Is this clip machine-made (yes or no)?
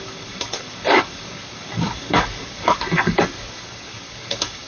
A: yes